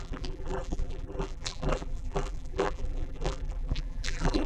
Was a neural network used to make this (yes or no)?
yes